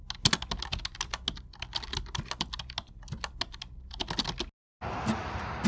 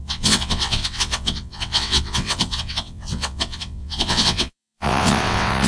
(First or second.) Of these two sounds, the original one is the first